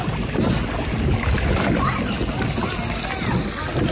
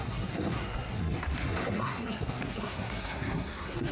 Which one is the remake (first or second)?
second